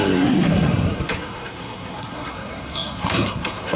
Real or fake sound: fake